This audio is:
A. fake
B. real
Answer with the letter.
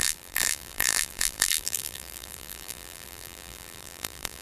A